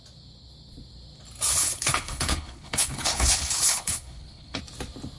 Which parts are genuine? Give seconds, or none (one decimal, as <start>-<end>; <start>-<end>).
0.0-1.5; 4.6-5.2